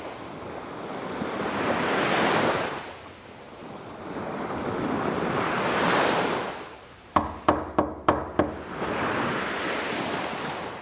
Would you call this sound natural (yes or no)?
yes